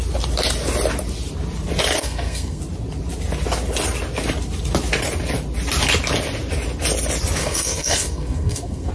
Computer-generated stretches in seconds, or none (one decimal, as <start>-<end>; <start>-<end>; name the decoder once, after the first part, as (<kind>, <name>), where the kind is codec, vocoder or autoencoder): 2.0-2.6 (codec, SNAC); 7.4-8.9